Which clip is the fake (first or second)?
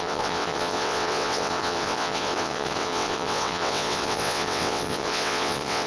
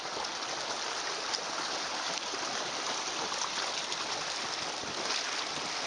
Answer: first